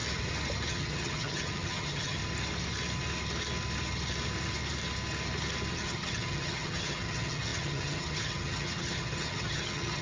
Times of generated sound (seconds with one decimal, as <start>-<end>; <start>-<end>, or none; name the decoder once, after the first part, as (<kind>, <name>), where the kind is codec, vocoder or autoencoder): 0.7-2.2 (vocoder, HiFi-GAN); 5.7-10.0